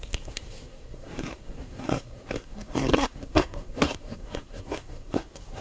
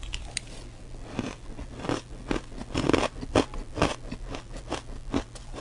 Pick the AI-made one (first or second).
first